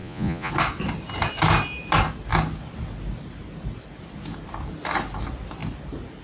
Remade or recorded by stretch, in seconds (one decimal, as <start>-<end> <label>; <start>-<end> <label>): 0.0-0.5 remade; 0.5-6.2 recorded